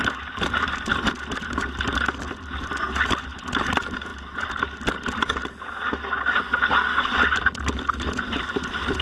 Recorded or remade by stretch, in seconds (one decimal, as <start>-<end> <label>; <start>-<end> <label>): 0.0-9.0 recorded